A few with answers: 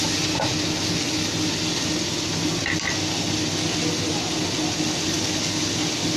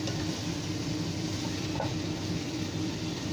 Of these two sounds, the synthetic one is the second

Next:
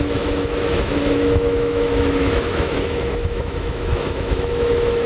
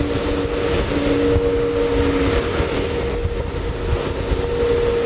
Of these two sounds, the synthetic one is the first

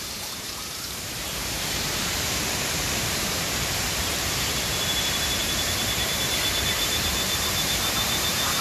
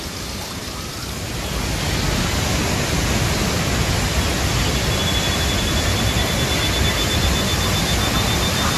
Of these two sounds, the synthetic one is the first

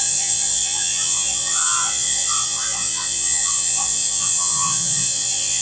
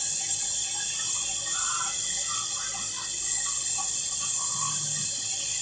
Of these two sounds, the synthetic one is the first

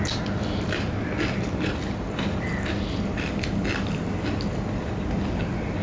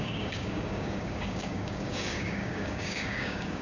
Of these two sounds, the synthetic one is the second